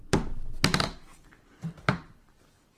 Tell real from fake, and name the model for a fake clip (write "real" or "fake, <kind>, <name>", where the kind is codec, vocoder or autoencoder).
fake, vocoder, BigVGAN v2